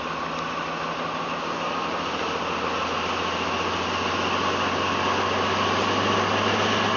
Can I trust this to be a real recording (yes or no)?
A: yes